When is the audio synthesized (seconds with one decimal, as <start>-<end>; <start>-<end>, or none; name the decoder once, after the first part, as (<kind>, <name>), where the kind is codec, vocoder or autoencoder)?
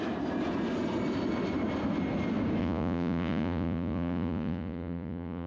2.6-5.5 (vocoder, Vocos)